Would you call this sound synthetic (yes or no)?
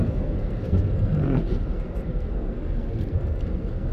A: yes